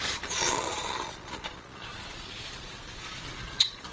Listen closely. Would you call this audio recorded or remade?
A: remade